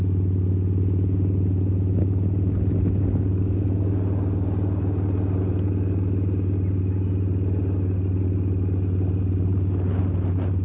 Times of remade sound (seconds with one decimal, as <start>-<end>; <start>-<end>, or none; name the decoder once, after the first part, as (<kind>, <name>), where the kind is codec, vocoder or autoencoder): none